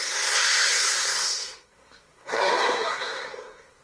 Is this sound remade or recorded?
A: remade